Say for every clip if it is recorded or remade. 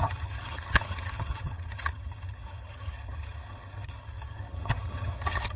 remade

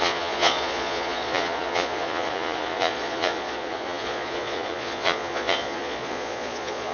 remade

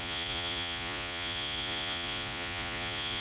remade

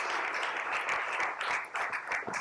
recorded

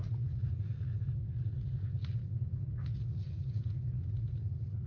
remade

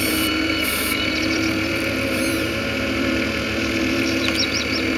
remade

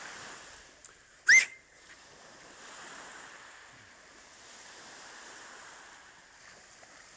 recorded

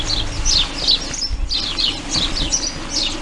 recorded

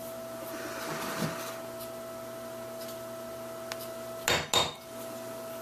recorded